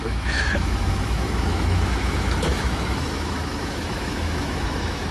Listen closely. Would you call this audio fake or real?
fake